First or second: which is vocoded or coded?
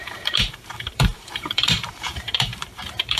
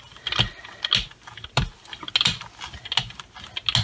first